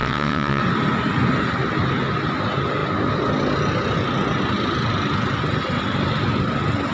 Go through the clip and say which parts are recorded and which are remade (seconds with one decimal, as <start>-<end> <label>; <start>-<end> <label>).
0.0-0.6 remade; 0.6-6.9 recorded